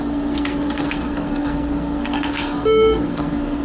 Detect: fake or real fake